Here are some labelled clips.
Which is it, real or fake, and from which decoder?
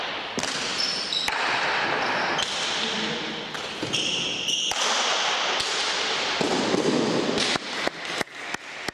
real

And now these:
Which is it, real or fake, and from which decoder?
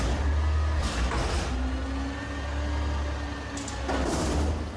real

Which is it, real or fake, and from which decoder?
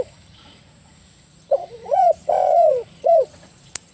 fake, vocoder, Vocos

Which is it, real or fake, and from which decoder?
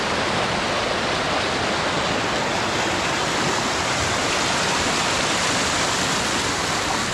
real